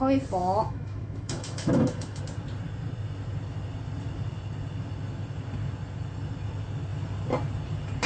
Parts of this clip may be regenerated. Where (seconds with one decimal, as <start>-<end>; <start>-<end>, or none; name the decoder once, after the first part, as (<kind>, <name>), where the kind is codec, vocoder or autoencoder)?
0.4-2.2 (autoencoder, DAC-VAE)